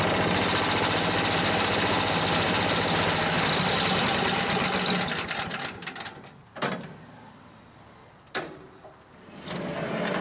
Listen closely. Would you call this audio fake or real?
real